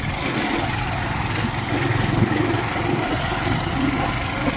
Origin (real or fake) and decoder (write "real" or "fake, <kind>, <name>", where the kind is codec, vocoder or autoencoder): real